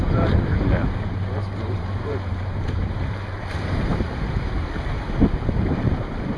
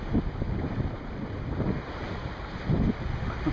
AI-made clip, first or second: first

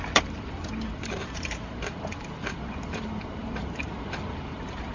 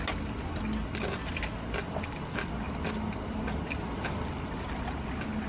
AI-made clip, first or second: first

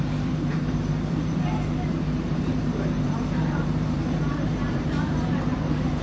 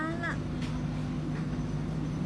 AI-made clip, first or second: first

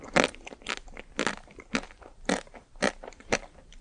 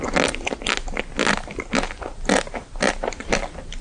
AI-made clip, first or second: first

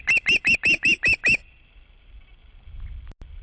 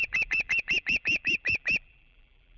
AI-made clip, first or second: second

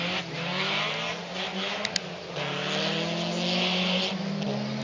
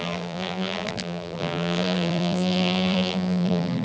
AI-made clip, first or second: second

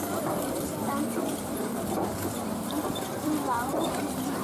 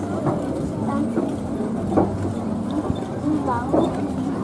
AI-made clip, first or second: first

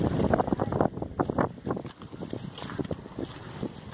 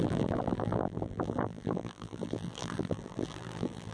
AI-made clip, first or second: second